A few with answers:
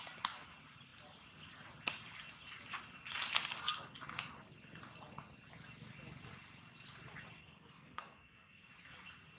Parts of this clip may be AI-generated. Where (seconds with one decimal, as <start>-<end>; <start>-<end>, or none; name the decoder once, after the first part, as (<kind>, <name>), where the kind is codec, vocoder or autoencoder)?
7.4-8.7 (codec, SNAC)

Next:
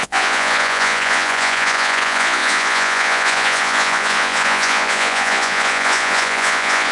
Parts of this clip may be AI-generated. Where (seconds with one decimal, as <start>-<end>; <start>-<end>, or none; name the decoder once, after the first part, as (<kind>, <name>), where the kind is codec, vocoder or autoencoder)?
0.0-6.9 (vocoder, Vocos)

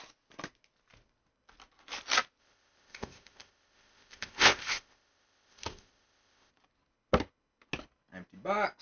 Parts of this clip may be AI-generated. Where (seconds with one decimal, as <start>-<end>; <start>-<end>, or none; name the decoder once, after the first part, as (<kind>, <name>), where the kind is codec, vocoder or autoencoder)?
2.4-6.5 (codec, ZipCodec)

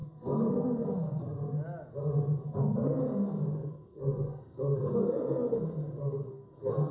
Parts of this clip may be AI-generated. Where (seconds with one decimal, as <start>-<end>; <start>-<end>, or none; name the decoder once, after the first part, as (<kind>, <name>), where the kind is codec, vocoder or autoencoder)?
0.0-1.2 (codec, SNAC); 2.4-3.0; 3.6-6.9